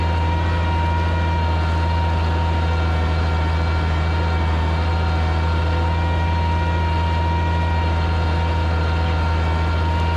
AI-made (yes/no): no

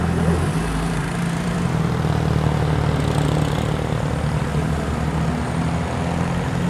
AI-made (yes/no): no